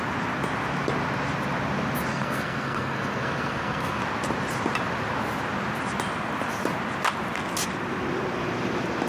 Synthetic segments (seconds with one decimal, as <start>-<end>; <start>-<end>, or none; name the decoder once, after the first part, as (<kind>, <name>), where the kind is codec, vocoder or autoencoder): 2.1-4.0 (codec, SNAC)